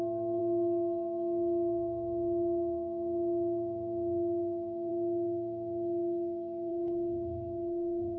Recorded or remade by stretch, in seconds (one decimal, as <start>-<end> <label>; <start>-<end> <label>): 0.0-6.7 recorded; 6.7-8.2 remade